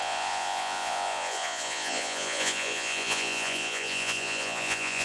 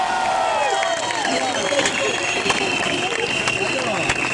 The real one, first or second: second